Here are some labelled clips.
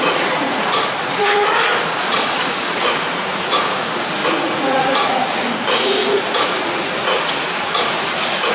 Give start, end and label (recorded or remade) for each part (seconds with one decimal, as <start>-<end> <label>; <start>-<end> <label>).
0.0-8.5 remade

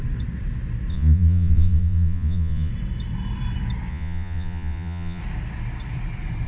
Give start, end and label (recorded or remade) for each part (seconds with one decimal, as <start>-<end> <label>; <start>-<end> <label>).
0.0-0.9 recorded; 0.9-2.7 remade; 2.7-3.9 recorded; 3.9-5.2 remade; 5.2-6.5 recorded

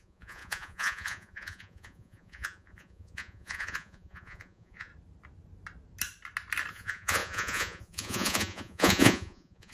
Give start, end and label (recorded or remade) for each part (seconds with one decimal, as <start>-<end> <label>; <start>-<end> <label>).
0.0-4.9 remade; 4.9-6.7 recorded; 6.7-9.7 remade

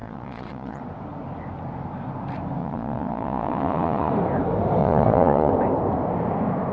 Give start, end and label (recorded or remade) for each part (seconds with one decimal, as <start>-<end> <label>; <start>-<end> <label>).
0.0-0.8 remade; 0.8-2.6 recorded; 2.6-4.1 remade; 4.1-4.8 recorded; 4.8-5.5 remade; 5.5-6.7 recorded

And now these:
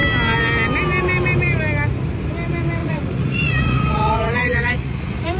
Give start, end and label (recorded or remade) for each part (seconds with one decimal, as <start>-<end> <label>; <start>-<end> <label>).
0.0-2.8 recorded; 2.8-5.4 remade